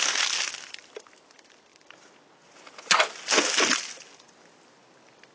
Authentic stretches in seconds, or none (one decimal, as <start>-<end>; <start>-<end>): 0.0-5.3